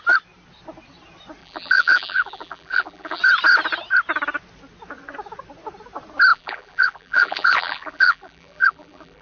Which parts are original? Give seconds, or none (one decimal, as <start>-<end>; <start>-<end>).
0.0-1.4; 3.2-6.3